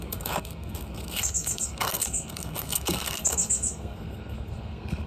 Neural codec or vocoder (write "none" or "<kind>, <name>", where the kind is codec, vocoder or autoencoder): codec, SNAC